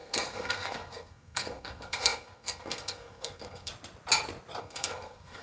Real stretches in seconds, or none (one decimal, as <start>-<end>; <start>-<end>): 3.7-4.6